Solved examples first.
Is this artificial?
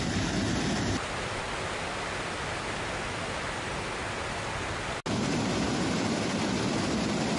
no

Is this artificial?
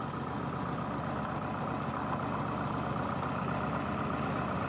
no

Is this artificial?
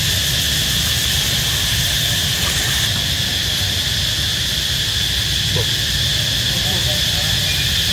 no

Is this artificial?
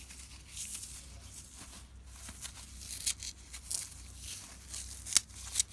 no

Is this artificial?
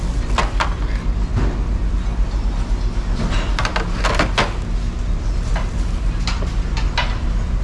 no